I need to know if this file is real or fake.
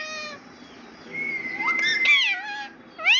real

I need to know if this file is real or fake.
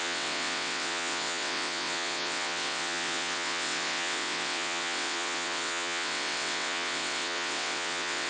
fake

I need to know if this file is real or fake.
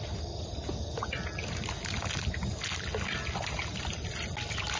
real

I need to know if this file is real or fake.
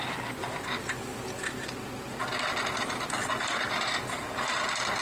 real